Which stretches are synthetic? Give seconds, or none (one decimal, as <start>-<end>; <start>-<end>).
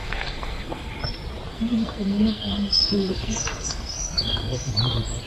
0.0-0.9; 1.5-4.7